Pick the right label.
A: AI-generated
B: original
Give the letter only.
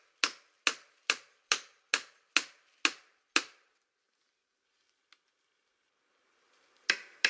B